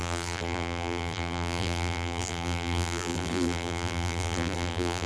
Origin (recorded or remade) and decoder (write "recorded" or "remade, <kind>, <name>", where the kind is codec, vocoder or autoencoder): remade, vocoder, BigVGAN v2